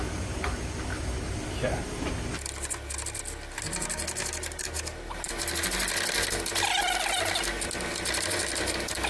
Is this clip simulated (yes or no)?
no